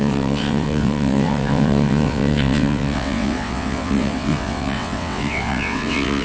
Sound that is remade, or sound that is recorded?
remade